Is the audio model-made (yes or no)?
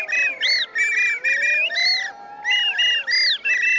no